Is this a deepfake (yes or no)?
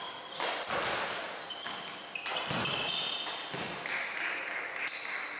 no